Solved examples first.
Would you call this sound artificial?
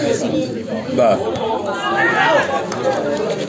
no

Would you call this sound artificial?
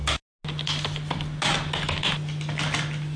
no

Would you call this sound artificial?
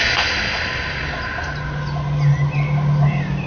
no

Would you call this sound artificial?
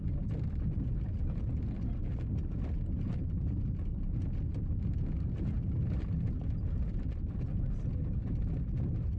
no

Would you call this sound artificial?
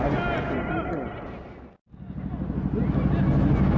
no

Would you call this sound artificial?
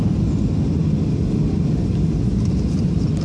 no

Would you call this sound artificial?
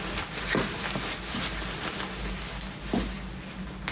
no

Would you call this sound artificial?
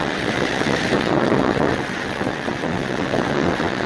yes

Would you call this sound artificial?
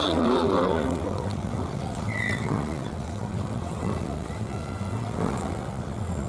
yes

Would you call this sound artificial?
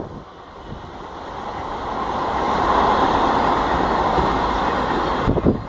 no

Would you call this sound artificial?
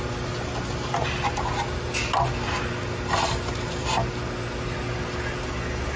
no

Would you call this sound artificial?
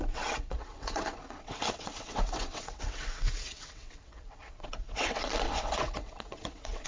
yes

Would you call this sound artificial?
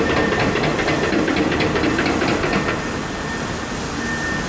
no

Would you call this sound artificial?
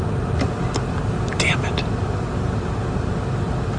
no